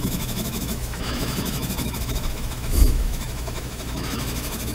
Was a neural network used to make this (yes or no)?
yes